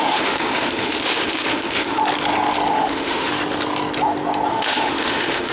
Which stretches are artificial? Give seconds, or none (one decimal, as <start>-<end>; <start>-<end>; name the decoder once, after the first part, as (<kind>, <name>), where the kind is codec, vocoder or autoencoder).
0.0-2.0 (autoencoder, DAC-VAE); 2.7-3.3; 4.5-5.5